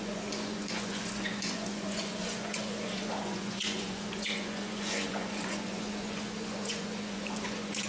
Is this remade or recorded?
remade